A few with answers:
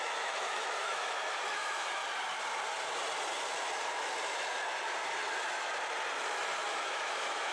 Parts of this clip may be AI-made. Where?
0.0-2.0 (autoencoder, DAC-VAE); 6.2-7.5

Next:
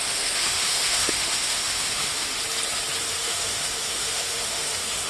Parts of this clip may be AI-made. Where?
0.0-2.4 (autoencoder, DAC-VAE); 3.1-5.1

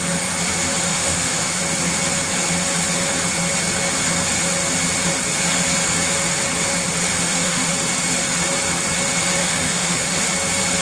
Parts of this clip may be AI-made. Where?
0.9-1.6 (autoencoder, DAC-VAE); 7.1-7.7; 9.4-10.2

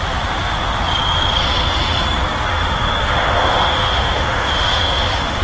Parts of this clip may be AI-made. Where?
2.5-5.4 (autoencoder, DAC-VAE)

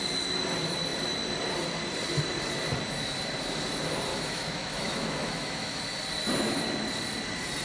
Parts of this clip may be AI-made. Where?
4.1-5.8 (autoencoder, DAC-VAE)

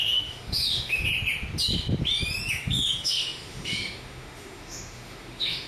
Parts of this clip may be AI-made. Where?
0.0-1.1 (autoencoder, DAC-VAE); 2.5-5.7